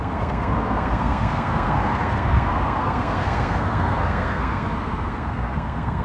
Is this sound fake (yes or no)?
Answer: yes